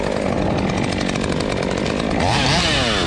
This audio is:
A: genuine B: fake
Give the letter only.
A